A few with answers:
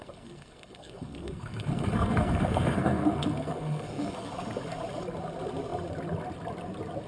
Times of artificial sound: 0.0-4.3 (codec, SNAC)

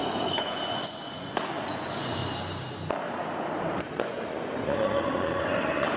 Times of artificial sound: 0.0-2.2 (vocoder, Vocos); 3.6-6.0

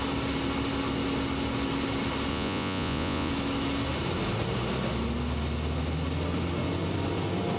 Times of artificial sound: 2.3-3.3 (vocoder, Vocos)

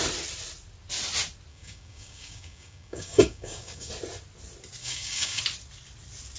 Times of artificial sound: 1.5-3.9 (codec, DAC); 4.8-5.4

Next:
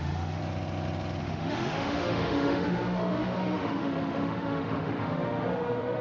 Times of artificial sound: 0.0-0.4 (autoencoder, DAC-VAE); 1.2-6.0